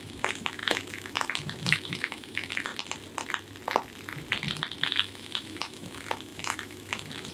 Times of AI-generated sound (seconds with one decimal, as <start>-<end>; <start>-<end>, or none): 0.0-2.7; 4.8-7.3